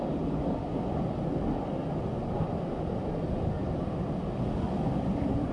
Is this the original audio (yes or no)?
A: yes